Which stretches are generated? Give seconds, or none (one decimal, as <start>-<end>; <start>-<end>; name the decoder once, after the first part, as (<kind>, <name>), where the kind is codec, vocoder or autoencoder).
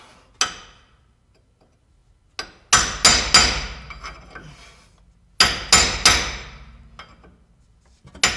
none